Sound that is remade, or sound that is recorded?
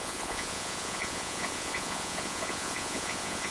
remade